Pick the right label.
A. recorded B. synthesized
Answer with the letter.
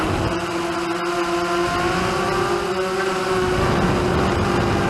A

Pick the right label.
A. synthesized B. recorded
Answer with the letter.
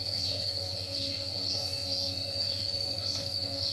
A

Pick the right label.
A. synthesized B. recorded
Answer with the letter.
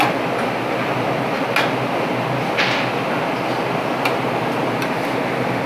B